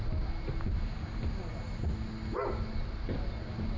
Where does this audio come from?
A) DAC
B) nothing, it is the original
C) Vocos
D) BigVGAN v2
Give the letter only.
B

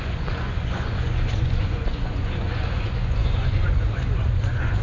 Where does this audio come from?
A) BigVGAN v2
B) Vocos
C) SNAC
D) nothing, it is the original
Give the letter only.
B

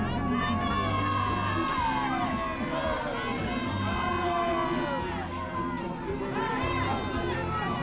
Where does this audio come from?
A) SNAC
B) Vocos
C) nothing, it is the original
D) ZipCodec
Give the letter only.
C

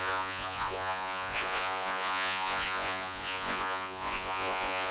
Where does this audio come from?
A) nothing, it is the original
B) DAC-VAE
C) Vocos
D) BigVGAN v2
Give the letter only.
C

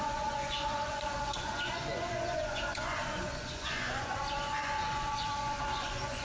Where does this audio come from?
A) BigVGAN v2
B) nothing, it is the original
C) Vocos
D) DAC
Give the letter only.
C